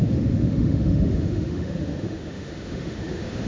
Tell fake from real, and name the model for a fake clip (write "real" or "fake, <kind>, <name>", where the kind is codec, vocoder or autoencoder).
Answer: fake, autoencoder, DAC-VAE